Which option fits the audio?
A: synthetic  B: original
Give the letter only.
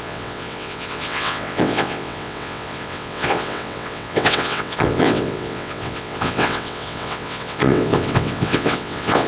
A